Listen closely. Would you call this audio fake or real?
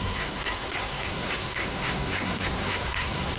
fake